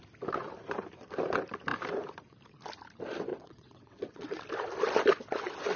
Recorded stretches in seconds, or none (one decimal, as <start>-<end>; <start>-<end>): 0.0-3.3; 4.4-5.8